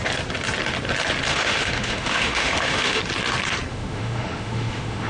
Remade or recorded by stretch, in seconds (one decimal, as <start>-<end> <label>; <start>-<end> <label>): 0.0-1.3 recorded; 1.3-3.0 remade; 3.0-3.7 recorded; 3.7-5.1 remade